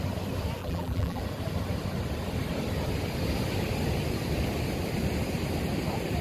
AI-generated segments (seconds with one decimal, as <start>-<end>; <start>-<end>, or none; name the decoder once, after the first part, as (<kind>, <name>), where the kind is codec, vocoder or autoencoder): 0.6-1.2 (vocoder, BigVGAN v2)